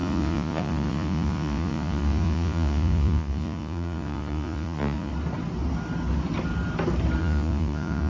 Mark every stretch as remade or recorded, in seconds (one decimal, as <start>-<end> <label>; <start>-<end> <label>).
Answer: 0.0-5.1 remade; 5.1-7.2 recorded; 7.2-8.1 remade